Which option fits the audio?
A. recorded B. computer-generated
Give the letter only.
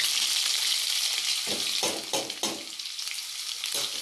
A